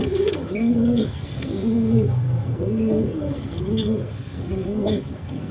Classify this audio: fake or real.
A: fake